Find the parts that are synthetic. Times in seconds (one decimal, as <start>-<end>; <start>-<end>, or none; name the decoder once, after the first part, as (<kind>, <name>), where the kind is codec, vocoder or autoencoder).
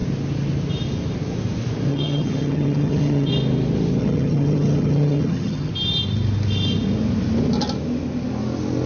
1.9-3.3 (vocoder, HiFi-GAN); 4.0-5.7